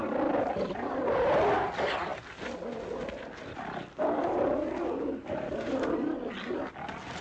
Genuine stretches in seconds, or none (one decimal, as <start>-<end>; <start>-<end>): 0.0-7.2